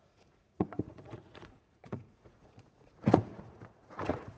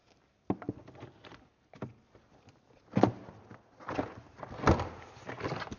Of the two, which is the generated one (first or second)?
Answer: first